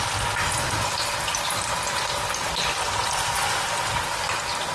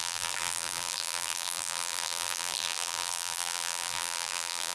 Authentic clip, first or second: first